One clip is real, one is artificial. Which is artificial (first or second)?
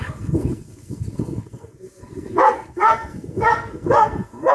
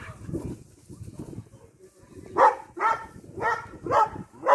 first